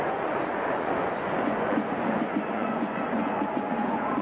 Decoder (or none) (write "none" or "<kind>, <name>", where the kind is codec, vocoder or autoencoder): vocoder, Vocos